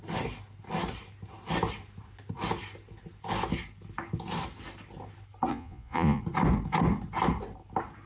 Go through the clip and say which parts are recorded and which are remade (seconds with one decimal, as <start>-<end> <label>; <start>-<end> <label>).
0.0-5.5 recorded; 5.5-6.2 remade; 6.2-8.1 recorded